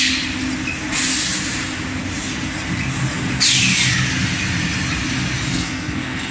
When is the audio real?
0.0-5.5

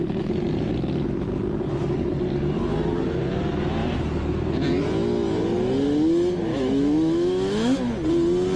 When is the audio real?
0.0-6.5; 7.9-8.6